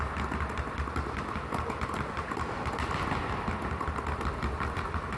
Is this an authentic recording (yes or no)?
yes